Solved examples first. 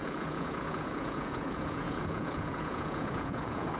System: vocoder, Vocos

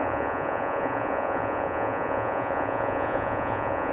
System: vocoder, Vocos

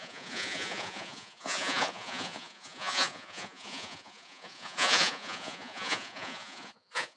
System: vocoder, Vocos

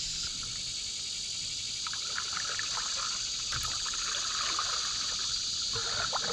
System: none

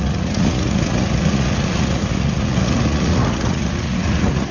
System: vocoder, Vocos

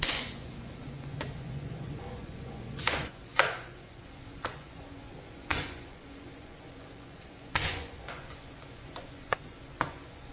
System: vocoder, Vocos